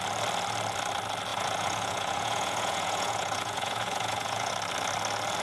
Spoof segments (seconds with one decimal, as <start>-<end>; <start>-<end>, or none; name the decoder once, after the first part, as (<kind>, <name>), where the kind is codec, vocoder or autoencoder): 1.3-4.5 (vocoder, Vocos)